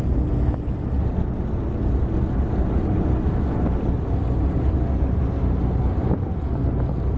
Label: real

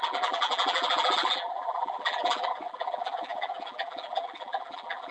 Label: fake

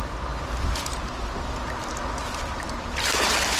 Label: real